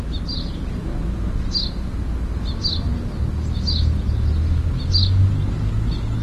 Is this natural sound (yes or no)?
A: yes